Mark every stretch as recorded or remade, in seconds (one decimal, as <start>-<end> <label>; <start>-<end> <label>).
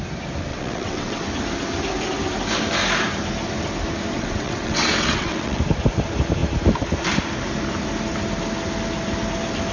0.0-0.5 recorded; 0.5-1.2 remade; 1.2-4.1 recorded; 4.1-5.6 remade; 5.6-9.7 recorded